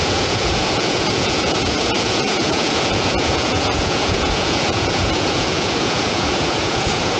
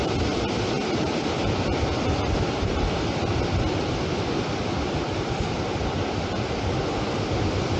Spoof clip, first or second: first